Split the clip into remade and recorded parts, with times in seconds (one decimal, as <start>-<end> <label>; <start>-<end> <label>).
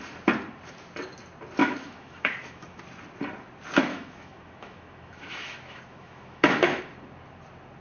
0.0-1.6 recorded; 1.6-2.8 remade; 2.8-3.9 recorded; 3.9-6.8 remade; 6.8-7.8 recorded